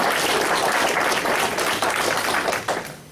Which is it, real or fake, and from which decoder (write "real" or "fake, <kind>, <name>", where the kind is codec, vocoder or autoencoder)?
fake, vocoder, BigVGAN v2